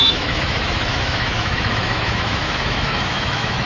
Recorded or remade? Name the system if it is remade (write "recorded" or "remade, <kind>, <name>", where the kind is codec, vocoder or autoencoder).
remade, autoencoder, DAC-VAE